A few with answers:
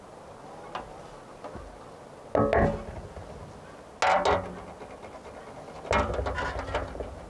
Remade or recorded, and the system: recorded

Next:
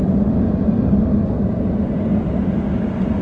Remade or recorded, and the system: recorded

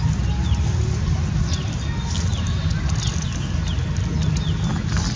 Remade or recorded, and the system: recorded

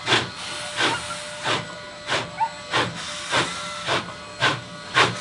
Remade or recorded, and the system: recorded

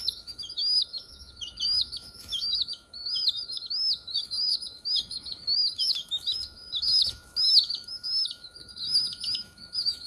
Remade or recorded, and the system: remade, autoencoder, DAC-VAE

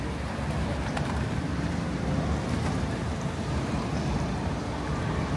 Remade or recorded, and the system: remade, vocoder, BigVGAN v2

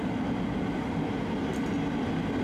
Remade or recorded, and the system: recorded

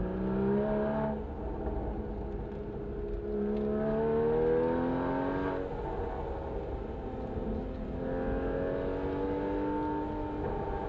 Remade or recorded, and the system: recorded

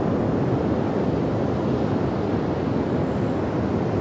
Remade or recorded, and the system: recorded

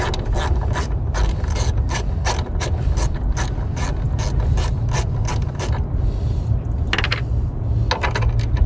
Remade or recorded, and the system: recorded